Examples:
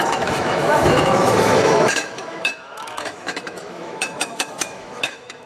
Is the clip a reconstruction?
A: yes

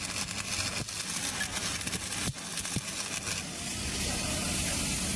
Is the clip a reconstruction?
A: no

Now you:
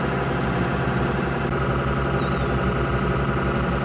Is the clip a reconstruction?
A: no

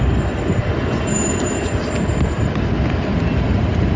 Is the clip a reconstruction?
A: yes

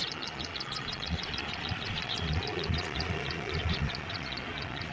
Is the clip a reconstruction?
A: yes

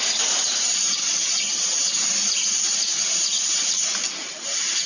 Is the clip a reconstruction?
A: no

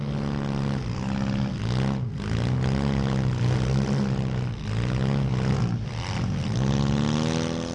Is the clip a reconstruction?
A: no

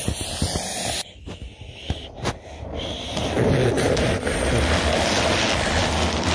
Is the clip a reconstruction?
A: no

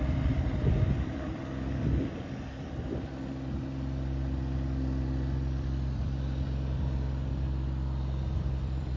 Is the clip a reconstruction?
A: yes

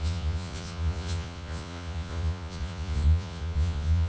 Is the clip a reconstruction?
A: yes